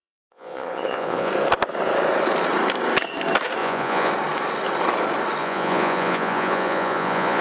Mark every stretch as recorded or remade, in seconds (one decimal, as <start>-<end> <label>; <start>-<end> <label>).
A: 0.0-1.3 remade; 1.3-3.6 recorded; 3.6-4.1 remade; 4.1-5.4 recorded; 5.4-7.4 remade